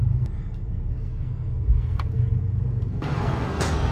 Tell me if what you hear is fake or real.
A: fake